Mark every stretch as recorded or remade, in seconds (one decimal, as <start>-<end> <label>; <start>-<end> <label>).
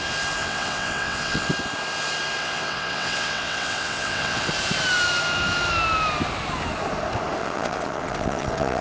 0.0-0.4 recorded; 0.4-1.5 remade; 1.5-2.4 recorded; 2.4-4.5 remade; 4.5-7.4 recorded; 7.4-8.8 remade